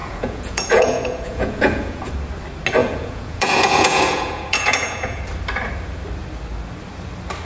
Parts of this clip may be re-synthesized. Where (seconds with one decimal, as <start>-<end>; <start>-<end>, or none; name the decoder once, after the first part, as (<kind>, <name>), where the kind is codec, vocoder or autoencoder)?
0.0-2.1 (vocoder, Vocos); 2.8-5.2